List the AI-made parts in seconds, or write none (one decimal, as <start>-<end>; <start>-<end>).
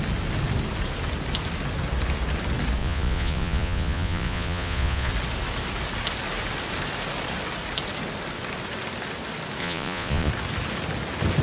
2.8-5.1; 9.6-10.3